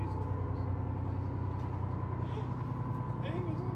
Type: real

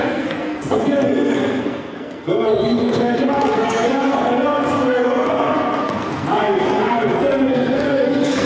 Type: fake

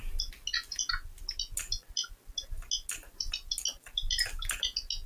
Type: real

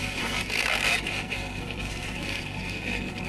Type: fake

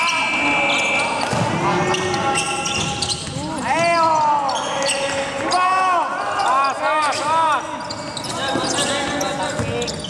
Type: real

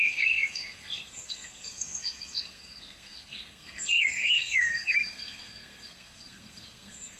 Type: fake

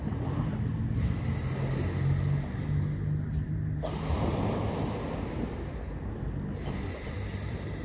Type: real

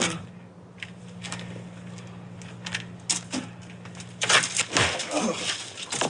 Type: real